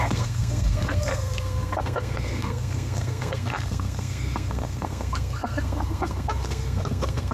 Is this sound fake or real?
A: fake